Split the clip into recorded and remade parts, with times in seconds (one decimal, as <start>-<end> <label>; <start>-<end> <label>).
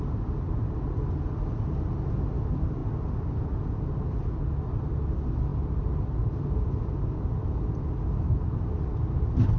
0.0-9.6 recorded